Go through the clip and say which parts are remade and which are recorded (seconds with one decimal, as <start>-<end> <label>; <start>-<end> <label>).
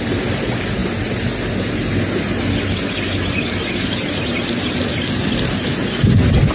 0.0-6.5 recorded